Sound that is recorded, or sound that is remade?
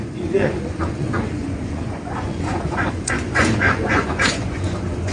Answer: remade